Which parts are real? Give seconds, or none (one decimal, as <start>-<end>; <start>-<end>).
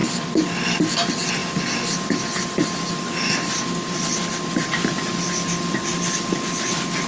0.0-7.1